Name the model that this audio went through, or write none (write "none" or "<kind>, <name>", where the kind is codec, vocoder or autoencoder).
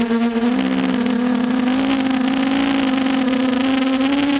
none